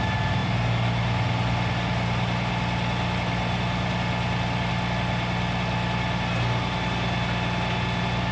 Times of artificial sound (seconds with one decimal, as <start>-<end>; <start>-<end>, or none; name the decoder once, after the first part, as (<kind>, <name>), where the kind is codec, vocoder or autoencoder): none